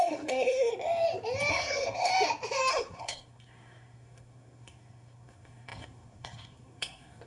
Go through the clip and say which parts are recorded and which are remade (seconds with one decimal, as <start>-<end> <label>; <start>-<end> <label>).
0.0-0.7 remade; 0.7-1.5 recorded; 1.5-2.1 remade; 2.1-2.7 recorded; 2.7-7.3 remade